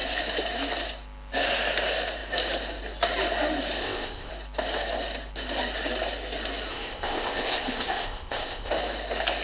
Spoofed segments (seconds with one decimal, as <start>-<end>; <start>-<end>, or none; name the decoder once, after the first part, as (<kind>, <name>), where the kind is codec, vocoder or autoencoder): 3.8-4.3 (codec, ZipCodec); 6.7-8.7